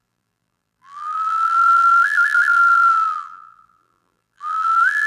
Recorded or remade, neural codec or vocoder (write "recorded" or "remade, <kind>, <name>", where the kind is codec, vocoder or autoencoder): remade, vocoder, BigVGAN v2